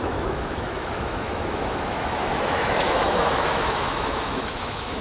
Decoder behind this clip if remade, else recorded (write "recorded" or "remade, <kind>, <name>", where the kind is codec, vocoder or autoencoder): remade, autoencoder, DAC-VAE